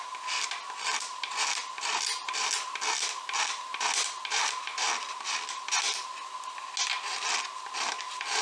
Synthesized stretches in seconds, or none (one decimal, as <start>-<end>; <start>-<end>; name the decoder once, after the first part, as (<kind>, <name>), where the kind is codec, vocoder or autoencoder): none